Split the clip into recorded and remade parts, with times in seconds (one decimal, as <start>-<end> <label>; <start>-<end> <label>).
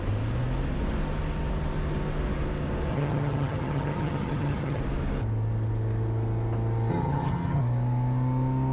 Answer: 0.0-2.9 recorded; 2.9-4.8 remade; 4.8-6.9 recorded; 6.9-7.6 remade; 7.6-8.7 recorded